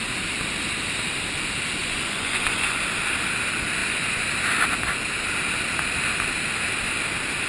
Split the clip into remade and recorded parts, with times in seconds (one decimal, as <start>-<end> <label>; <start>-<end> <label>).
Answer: 0.0-1.8 recorded; 1.8-2.8 remade; 2.8-3.8 recorded; 3.8-4.3 remade; 4.3-7.5 recorded